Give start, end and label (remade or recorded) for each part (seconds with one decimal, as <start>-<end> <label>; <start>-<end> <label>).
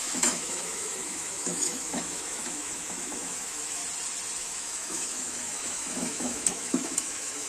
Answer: 0.0-3.8 remade; 3.8-4.4 recorded; 4.4-7.5 remade